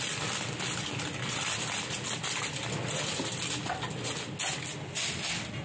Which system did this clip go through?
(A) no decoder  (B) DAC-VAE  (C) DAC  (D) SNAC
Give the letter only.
A